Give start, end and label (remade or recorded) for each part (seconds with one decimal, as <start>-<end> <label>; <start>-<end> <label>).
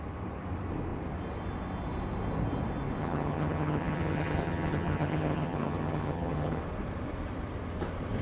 0.0-3.0 recorded; 3.0-6.6 remade; 6.6-8.2 recorded